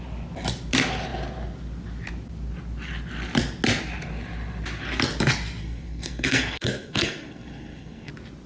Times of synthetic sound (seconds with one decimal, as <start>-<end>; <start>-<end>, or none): 5.6-8.1